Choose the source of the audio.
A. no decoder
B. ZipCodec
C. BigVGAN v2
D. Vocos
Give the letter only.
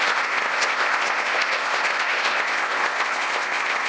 B